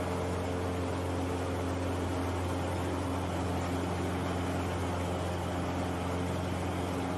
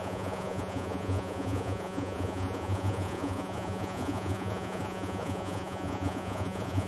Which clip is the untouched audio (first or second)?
first